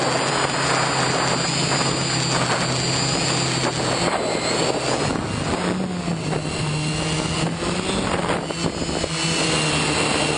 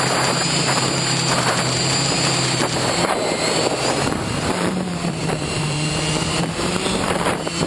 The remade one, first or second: second